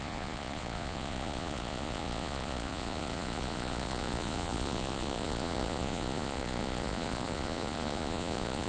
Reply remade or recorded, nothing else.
remade